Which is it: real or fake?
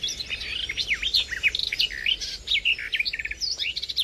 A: real